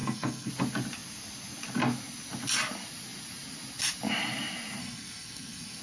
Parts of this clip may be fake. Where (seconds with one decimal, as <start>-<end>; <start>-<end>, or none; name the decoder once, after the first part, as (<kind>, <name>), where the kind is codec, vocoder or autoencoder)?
0.0-0.5 (codec, SNAC); 4.8-5.8